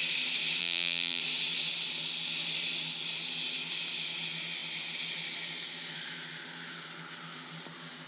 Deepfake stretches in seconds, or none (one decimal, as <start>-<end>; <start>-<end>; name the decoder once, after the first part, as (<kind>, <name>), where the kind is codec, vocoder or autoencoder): 0.6-1.2 (vocoder, BigVGAN v2)